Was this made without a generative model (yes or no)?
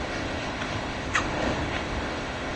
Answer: no